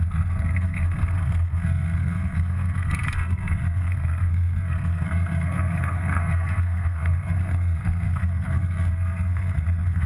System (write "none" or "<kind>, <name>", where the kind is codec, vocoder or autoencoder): codec, SNAC